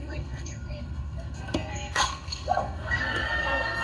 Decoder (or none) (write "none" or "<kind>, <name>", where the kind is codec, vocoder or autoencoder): codec, SNAC